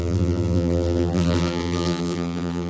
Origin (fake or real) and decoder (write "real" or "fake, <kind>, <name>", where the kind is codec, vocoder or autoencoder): fake, vocoder, BigVGAN v2